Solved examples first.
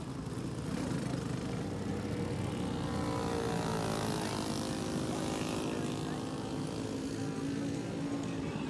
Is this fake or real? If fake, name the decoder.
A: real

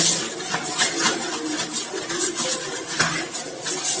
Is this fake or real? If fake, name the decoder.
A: real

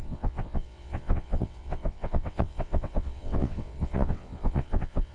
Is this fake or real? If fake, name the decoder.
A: fake, vocoder, WaveNeXt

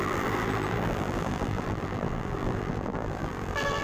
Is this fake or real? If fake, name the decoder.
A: fake, vocoder, BigVGAN v2